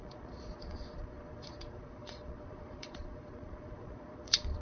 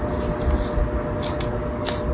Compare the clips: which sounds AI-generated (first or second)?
first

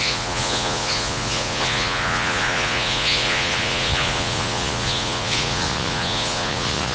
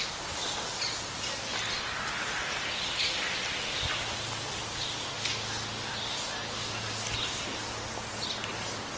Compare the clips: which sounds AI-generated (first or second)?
first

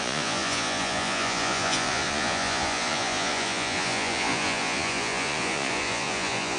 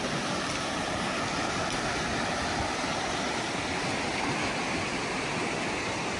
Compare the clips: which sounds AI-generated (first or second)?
first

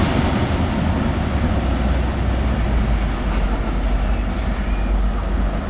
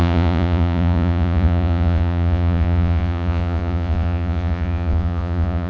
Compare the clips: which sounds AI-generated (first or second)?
second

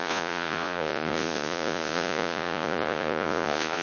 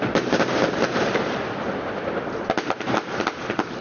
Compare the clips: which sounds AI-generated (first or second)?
first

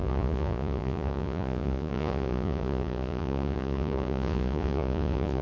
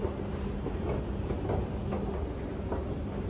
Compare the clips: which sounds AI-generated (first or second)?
first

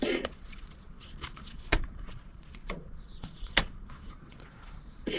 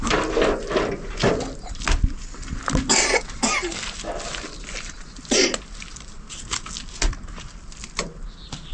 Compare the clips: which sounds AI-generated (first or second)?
first